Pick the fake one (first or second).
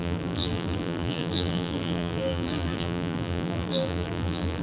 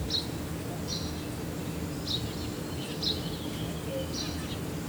first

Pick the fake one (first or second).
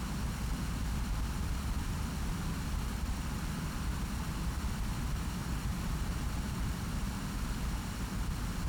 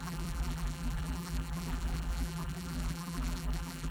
second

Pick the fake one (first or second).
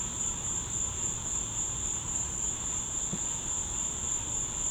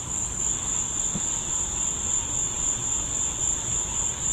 first